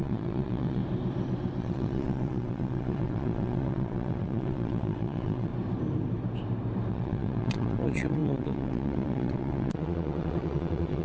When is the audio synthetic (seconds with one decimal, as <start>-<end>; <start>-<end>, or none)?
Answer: 0.0-0.8; 1.6-5.5; 6.9-11.0